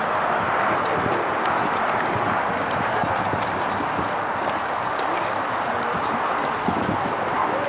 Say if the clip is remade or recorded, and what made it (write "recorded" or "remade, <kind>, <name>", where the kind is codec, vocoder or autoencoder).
recorded